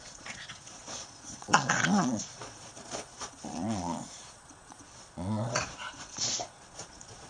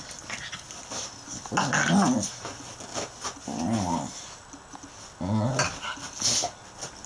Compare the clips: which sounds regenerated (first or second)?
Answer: first